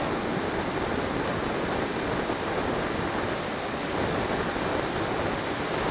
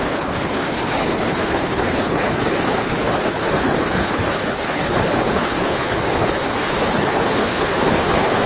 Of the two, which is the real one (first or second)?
first